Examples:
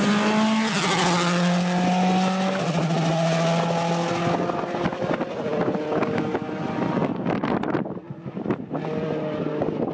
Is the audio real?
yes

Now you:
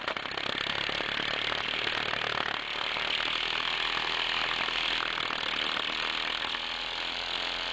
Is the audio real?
yes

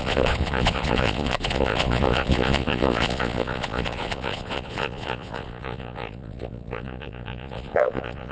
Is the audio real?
no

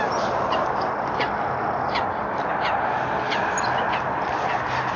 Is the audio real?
yes